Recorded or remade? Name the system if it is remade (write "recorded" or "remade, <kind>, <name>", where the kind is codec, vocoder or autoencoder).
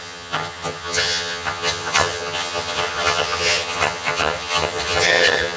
remade, vocoder, HiFi-GAN